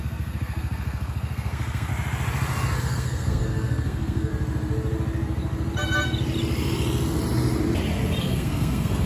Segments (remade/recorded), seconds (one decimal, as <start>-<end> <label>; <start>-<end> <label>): 0.0-1.9 remade; 1.9-2.8 recorded; 2.8-4.3 remade; 4.3-8.2 recorded; 8.2-9.1 remade